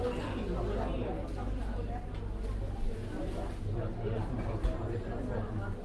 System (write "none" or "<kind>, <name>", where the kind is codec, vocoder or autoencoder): none